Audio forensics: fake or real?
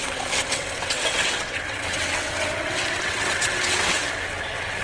fake